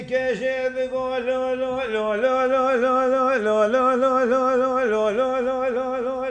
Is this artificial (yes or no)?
no